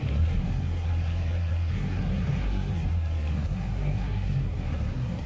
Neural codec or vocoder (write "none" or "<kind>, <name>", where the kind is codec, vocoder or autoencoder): codec, SNAC